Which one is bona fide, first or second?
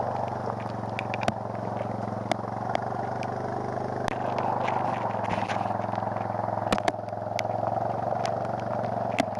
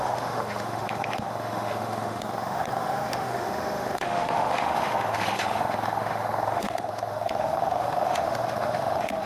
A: first